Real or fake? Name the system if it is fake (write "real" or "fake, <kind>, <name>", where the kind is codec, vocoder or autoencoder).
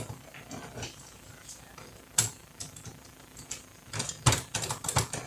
real